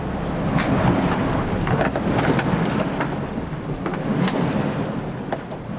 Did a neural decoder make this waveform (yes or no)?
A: no